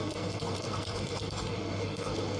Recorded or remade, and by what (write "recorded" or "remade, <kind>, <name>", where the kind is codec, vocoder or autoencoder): remade, codec, SNAC